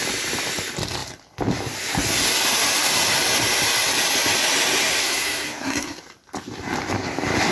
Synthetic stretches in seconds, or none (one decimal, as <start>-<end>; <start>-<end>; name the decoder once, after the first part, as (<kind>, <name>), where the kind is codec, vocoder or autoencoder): 5.0-6.0 (codec, SNAC)